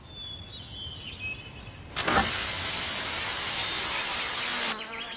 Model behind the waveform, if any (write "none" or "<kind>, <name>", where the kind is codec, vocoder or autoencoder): none